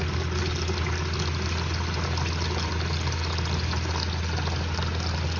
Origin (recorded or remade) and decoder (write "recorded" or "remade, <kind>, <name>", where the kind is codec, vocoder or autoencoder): recorded